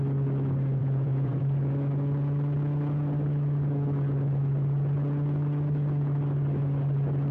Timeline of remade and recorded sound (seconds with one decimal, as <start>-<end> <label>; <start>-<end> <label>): 0.0-0.8 recorded; 0.8-1.4 remade; 1.4-7.3 recorded